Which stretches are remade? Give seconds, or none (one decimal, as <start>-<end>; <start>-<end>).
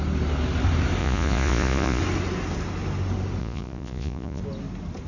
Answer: 1.0-2.0; 3.4-4.4